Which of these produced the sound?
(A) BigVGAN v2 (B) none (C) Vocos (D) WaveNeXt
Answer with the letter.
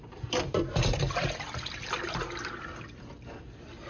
B